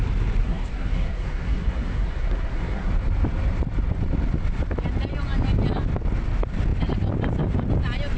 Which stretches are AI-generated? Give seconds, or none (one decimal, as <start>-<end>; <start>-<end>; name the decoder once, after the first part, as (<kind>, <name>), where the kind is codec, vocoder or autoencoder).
0.4-2.9 (codec, SNAC)